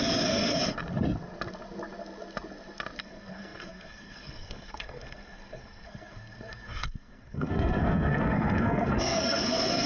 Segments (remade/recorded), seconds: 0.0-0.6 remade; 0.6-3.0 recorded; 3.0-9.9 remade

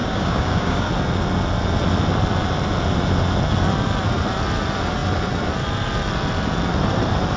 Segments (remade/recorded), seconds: 0.0-0.9 remade; 0.9-7.4 recorded